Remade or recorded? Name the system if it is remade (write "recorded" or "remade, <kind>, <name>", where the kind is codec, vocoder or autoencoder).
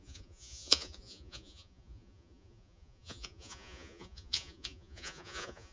remade, vocoder, Vocos